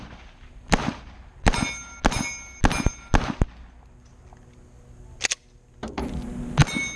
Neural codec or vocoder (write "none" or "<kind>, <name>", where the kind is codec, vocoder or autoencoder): none